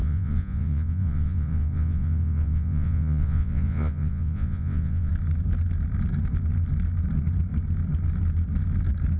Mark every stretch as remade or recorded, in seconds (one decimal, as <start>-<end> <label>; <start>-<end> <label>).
0.0-5.1 remade; 5.1-9.2 recorded